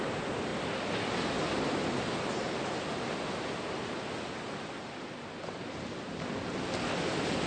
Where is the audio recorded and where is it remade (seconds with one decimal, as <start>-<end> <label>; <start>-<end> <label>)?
0.0-7.5 recorded